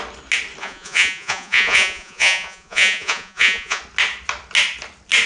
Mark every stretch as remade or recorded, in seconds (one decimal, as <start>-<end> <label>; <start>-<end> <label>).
0.0-0.6 recorded; 0.6-3.8 remade; 3.8-5.3 recorded